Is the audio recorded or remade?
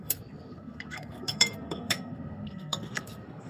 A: remade